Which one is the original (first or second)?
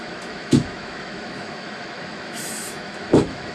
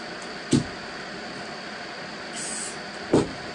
second